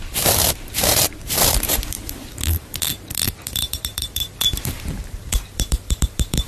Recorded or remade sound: remade